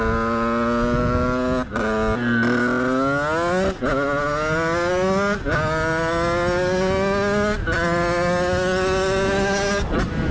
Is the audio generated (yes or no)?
no